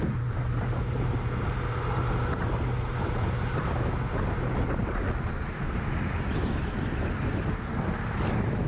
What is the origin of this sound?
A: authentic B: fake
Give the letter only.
A